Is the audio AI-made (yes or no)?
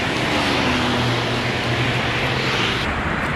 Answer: no